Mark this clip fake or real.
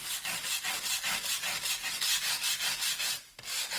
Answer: real